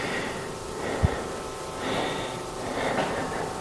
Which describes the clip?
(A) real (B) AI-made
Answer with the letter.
B